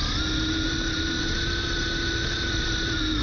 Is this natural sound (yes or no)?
yes